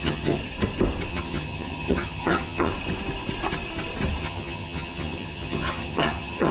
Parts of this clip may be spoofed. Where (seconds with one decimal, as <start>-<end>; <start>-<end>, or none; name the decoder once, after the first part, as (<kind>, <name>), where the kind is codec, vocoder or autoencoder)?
0.0-0.4 (vocoder, HiFi-GAN); 1.1-2.7; 4.2-6.5